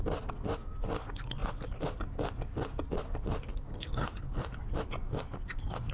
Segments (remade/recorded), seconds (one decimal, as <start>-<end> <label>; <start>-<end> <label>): 0.0-5.9 recorded